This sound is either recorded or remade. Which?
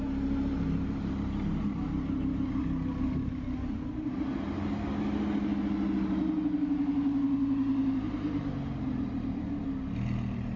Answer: recorded